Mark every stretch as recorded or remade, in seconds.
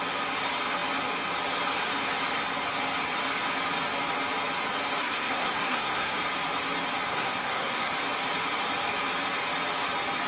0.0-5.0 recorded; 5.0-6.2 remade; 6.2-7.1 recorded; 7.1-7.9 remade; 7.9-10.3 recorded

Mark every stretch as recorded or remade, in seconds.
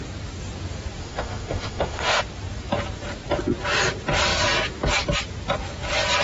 0.0-1.0 recorded; 1.0-2.2 remade; 2.2-6.2 recorded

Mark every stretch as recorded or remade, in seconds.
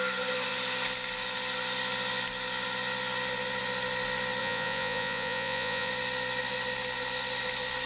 0.0-4.4 recorded; 4.4-5.9 remade; 5.9-7.9 recorded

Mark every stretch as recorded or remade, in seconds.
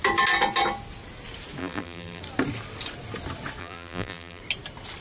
0.0-1.6 recorded; 1.6-2.2 remade; 2.2-3.6 recorded; 3.6-4.4 remade; 4.4-5.0 recorded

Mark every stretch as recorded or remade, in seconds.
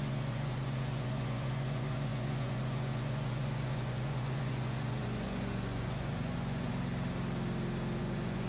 0.0-6.7 remade; 6.7-8.0 recorded; 8.0-8.5 remade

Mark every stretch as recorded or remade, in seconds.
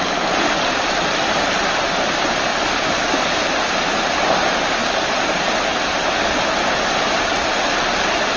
0.0-2.5 recorded; 2.5-3.4 remade; 3.4-4.8 recorded; 4.8-5.3 remade; 5.3-8.4 recorded